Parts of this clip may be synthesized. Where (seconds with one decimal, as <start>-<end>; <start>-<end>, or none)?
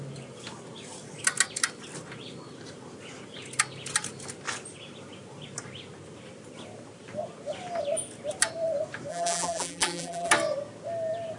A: 9.1-10.3